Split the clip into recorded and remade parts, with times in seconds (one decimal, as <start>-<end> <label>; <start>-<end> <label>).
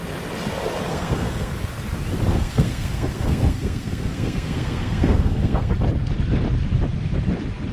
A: 0.0-0.9 recorded; 0.9-1.5 remade; 1.5-2.3 recorded; 2.3-5.7 remade; 5.7-7.7 recorded